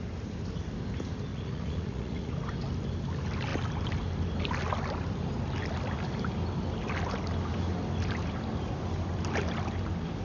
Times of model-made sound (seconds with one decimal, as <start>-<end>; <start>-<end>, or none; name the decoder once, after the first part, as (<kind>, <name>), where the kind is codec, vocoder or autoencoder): 1.3-2.3 (vocoder, Vocos)